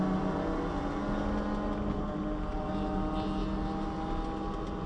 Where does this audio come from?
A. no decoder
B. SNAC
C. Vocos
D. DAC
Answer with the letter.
A